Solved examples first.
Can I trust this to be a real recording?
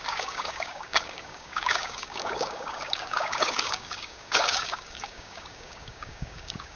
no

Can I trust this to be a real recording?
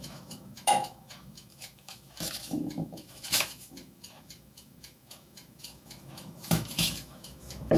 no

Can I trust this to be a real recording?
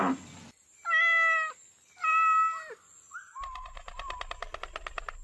yes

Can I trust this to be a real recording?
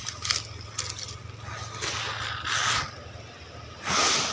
yes